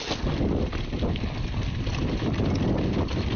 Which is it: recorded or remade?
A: recorded